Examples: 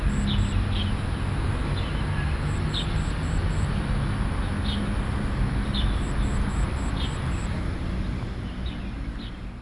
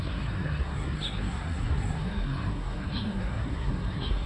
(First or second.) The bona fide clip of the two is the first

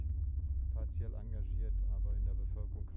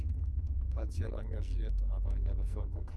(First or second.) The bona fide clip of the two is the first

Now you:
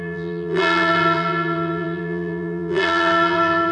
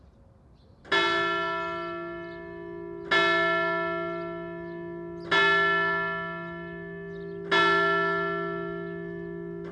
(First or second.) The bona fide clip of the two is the second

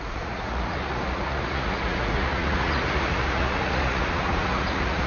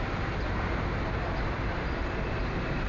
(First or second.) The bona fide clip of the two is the second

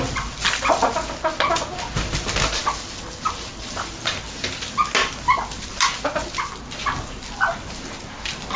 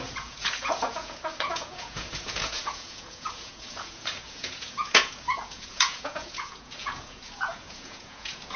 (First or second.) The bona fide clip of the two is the first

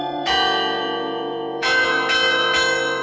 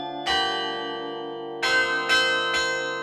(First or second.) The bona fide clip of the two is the second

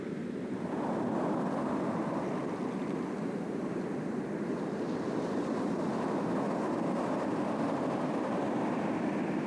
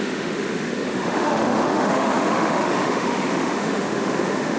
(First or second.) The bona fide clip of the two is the first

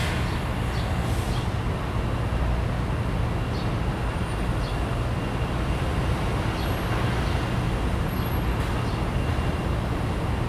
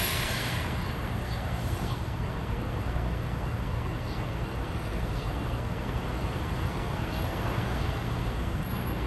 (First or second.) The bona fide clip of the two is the first